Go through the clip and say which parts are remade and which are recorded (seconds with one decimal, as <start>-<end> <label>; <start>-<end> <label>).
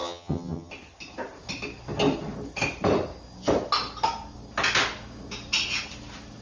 0.0-0.7 remade; 0.7-6.4 recorded